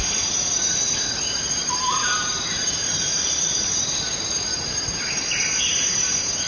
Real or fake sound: fake